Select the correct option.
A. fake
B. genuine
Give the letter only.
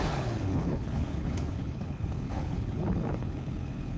A